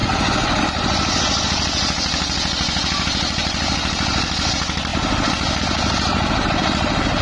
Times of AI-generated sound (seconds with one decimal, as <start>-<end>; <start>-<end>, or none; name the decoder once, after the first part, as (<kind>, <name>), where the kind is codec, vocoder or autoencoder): 0.0-0.6 (vocoder, Vocos)